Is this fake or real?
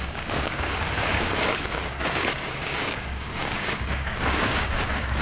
fake